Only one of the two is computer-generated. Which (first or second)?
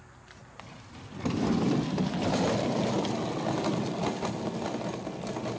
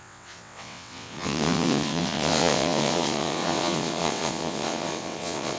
second